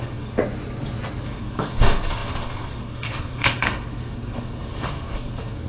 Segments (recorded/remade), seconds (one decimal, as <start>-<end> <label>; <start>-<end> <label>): 0.0-0.4 remade; 0.4-1.2 recorded; 1.2-5.7 remade